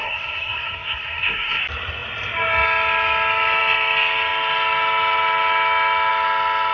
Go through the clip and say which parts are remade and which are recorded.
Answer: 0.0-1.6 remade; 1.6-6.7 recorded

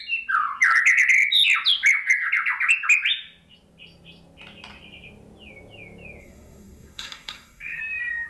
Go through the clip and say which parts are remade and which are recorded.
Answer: 0.0-6.2 recorded; 6.2-7.8 remade; 7.8-8.3 recorded

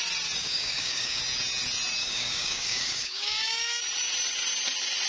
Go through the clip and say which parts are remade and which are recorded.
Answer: 0.0-0.4 recorded; 0.4-1.2 remade; 1.2-2.0 recorded; 2.0-3.8 remade; 3.8-5.1 recorded

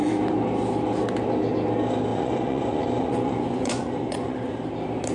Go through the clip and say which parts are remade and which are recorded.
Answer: 0.0-2.1 recorded; 2.1-4.6 remade; 4.6-5.1 recorded